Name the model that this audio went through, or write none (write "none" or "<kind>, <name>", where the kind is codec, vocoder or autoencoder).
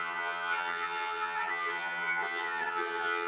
vocoder, HiFi-GAN